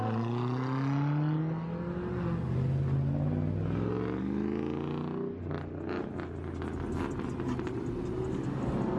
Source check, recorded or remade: recorded